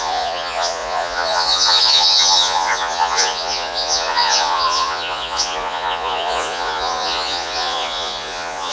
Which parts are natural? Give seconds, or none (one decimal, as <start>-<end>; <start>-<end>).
none